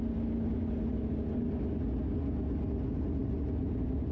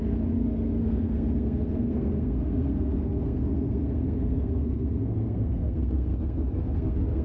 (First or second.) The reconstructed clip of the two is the second